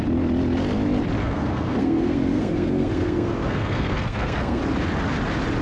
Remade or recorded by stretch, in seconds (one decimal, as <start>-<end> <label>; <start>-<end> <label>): 0.0-1.2 recorded; 1.2-4.6 remade; 4.6-5.6 recorded